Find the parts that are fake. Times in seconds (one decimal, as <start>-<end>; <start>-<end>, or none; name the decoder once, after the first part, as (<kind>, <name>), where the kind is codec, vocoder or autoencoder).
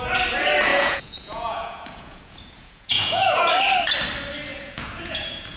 0.7-3.5 (vocoder, Vocos); 4.5-5.6